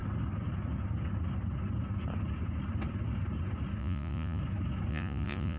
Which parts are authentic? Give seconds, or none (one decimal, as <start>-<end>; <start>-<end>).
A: 0.0-3.8; 4.4-4.9